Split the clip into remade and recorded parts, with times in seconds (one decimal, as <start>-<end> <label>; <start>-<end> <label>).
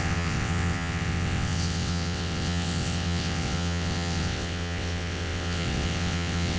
0.0-6.6 remade